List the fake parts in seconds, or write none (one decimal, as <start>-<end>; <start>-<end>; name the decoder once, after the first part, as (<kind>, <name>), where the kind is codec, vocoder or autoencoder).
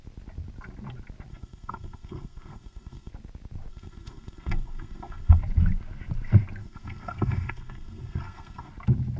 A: 1.3-3.1 (codec, SNAC); 3.7-5.4; 6.6-8.7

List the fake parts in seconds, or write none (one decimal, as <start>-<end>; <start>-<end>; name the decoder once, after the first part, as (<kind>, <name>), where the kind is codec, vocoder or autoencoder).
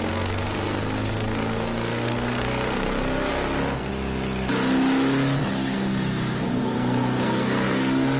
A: 0.0-3.9 (codec, SNAC); 5.4-8.2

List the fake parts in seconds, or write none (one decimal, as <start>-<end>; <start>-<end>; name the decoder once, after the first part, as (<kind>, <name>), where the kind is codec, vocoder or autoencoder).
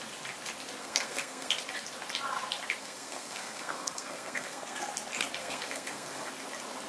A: 0.8-1.5 (codec, SNAC); 2.8-4.9; 5.4-6.3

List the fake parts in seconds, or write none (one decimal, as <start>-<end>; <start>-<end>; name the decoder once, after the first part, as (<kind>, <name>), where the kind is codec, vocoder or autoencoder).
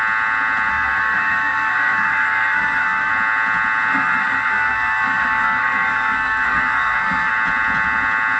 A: 0.7-3.1 (codec, SNAC); 3.9-7.3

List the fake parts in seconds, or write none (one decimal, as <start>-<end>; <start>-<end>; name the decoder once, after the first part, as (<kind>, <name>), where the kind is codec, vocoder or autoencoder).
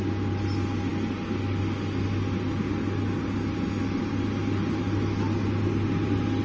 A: none